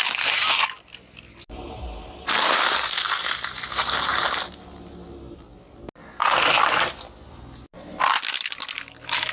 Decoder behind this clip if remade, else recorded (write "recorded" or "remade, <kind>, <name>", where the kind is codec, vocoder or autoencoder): recorded